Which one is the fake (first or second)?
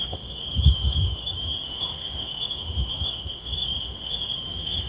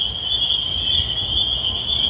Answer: first